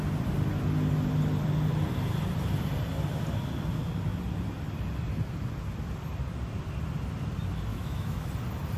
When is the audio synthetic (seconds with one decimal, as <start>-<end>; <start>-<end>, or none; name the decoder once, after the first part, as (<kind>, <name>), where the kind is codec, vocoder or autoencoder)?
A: 7.7-8.3 (autoencoder, DAC-VAE)